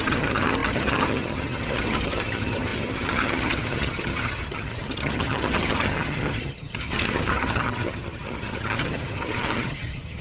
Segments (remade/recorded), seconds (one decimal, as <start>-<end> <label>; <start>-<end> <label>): 0.0-10.2 remade